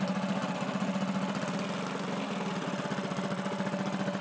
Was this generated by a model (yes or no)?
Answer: no